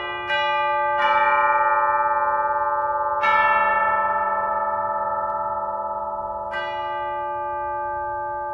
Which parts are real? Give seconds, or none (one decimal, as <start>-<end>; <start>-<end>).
0.0-3.7; 4.5-8.5